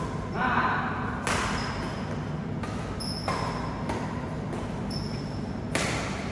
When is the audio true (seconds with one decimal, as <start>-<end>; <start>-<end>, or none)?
0.0-6.3